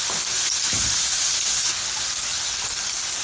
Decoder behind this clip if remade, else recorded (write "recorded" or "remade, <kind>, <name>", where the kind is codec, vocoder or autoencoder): recorded